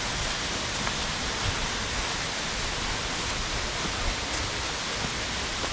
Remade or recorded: recorded